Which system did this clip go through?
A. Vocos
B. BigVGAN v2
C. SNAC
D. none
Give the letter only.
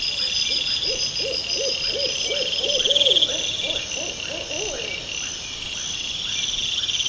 D